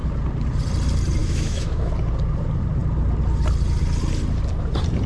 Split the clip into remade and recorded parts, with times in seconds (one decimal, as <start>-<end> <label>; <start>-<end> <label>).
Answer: 0.0-1.2 recorded; 1.2-1.9 remade; 1.9-5.1 recorded